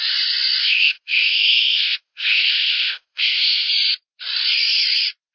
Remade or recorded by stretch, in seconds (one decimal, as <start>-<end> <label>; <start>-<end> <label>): 0.0-0.6 recorded; 0.6-3.7 remade; 3.7-5.3 recorded